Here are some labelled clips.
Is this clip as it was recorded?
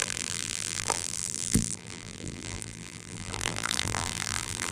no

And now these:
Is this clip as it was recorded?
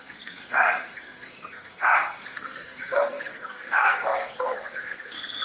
no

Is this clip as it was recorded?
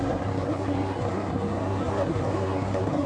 no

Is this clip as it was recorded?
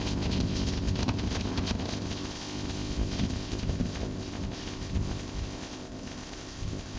no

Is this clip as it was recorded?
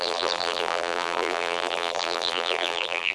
no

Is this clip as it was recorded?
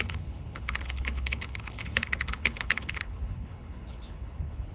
no